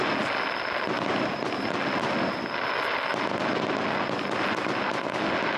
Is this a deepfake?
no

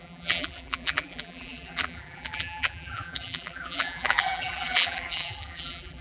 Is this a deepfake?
yes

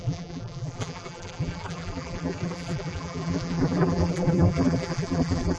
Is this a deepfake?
yes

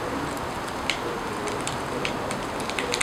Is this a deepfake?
no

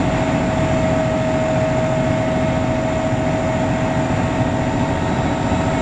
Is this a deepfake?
no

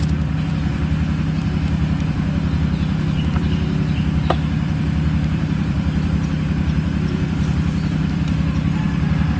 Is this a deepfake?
yes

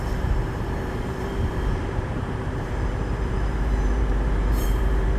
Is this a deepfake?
yes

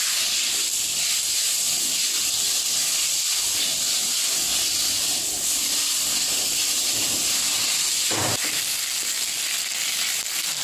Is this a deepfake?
no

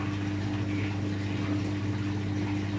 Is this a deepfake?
no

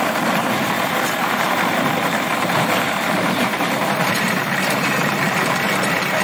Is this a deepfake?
yes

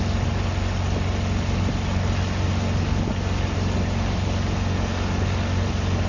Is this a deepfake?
no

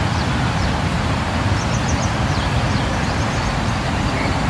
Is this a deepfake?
no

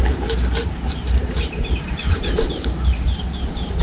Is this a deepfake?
yes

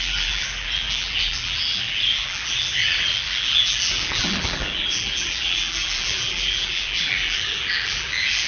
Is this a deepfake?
yes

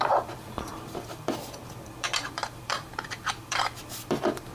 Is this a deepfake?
yes